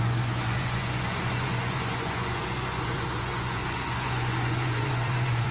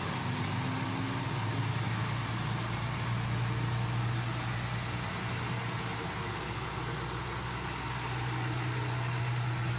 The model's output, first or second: first